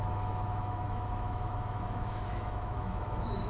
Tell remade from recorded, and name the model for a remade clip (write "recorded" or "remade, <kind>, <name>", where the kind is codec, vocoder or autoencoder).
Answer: remade, autoencoder, DAC-VAE